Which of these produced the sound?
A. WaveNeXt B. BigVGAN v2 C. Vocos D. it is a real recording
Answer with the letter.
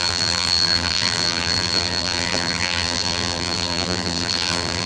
B